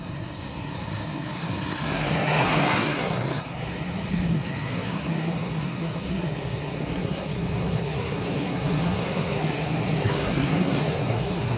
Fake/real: fake